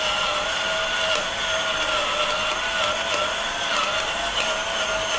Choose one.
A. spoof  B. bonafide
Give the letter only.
B